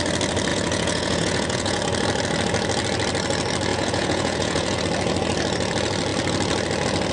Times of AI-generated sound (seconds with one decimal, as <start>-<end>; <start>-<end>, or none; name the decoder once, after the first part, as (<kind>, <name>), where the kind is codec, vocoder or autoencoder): 0.5-1.8 (vocoder, Vocos); 3.7-4.8